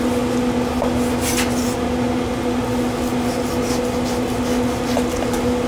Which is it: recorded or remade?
recorded